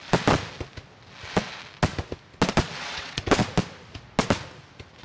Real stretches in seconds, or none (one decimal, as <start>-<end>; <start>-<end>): 0.0-2.8; 3.4-5.0